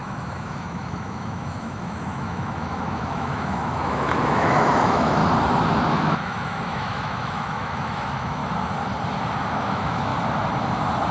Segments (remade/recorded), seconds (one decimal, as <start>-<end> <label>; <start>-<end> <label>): 0.0-5.2 remade; 5.2-5.9 recorded; 5.9-8.4 remade; 8.4-9.5 recorded; 9.5-10.1 remade; 10.1-11.1 recorded